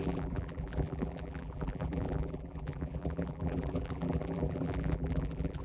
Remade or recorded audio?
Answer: remade